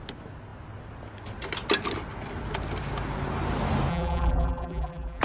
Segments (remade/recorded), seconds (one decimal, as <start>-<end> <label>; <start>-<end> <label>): 0.0-3.9 recorded; 3.9-5.2 remade